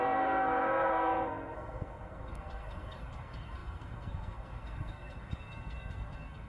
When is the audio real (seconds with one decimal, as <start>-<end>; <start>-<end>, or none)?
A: none